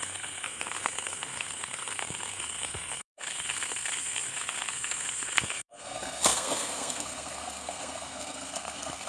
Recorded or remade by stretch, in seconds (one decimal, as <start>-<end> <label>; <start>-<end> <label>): 0.0-9.1 remade